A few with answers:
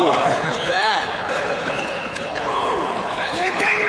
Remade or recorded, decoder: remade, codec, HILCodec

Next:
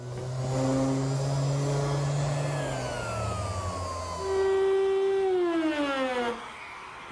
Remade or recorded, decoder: recorded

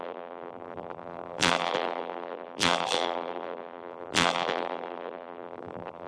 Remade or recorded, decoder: remade, vocoder, BigVGAN v2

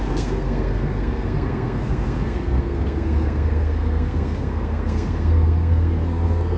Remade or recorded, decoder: remade, codec, SNAC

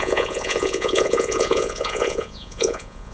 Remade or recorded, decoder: remade, vocoder, Vocos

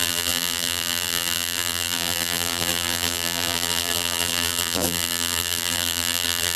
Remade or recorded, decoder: remade, vocoder, BigVGAN v2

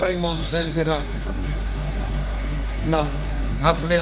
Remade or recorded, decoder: remade, codec, SNAC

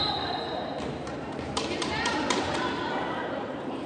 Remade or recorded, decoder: remade, vocoder, BigVGAN v2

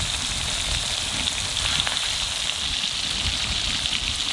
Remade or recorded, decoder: recorded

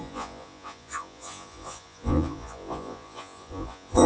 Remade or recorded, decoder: remade, vocoder, Vocos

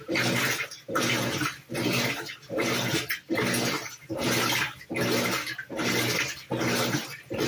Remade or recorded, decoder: recorded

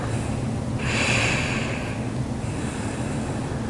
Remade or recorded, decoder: recorded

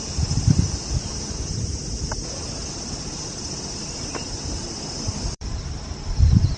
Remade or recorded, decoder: remade, vocoder, BigVGAN v2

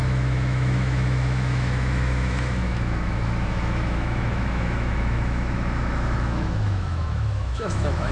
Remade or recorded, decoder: remade, autoencoder, DAC-VAE